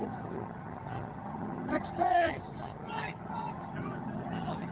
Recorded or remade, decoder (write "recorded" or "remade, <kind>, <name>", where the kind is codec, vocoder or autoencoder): remade, vocoder, HiFi-GAN